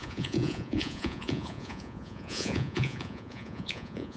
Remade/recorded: remade